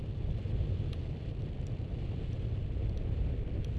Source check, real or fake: real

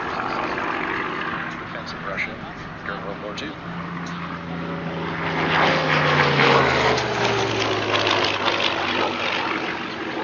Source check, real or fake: real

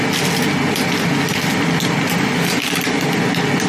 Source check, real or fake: real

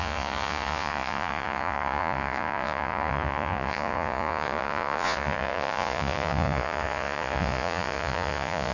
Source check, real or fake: fake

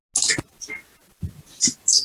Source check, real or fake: real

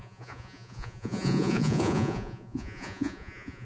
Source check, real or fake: fake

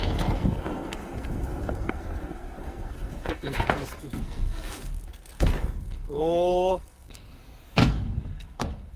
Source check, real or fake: fake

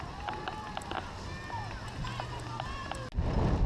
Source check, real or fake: real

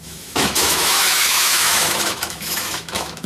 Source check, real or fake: fake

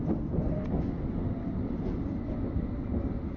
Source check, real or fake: real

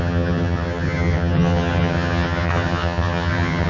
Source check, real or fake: fake